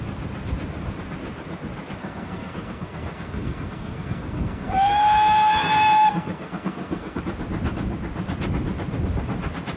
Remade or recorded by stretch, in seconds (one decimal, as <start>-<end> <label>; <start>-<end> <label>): 0.0-2.0 recorded; 2.0-7.2 remade; 7.2-9.8 recorded